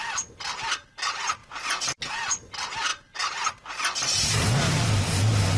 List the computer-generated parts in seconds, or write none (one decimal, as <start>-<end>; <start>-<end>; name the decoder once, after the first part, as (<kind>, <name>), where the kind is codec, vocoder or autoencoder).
1.4-2.1 (vocoder, Vocos)